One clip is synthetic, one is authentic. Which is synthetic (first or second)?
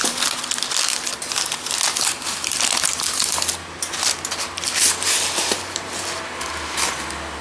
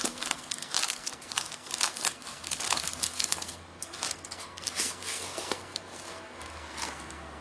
second